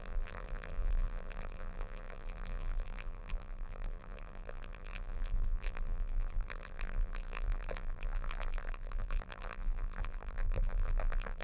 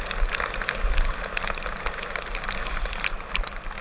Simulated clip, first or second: first